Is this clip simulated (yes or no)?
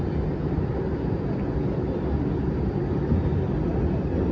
no